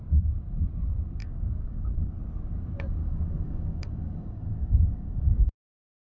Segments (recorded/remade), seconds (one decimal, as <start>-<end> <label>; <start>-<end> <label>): 0.0-1.2 recorded; 1.2-2.2 remade; 2.2-3.0 recorded; 3.0-5.5 remade; 5.5-6.1 recorded